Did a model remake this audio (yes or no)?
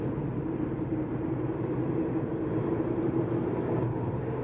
yes